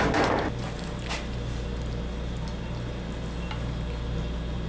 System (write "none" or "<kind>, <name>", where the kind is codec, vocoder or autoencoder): none